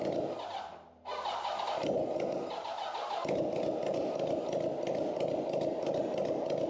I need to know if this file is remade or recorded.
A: recorded